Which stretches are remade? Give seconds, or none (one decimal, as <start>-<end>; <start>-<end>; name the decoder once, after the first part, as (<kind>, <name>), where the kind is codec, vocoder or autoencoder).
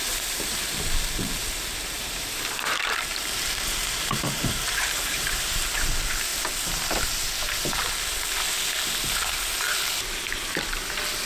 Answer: 0.0-6.3 (vocoder, BigVGAN v2)